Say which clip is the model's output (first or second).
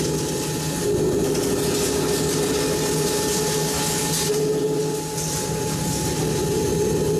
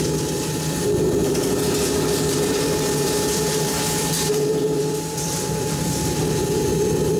second